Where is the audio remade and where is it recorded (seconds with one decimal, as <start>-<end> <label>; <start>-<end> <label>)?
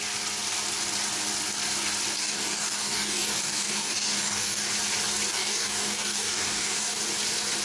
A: 0.0-2.2 recorded; 2.2-4.7 remade; 4.7-5.3 recorded; 5.3-7.0 remade; 7.0-7.6 recorded